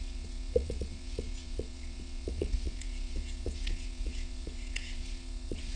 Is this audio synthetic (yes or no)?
yes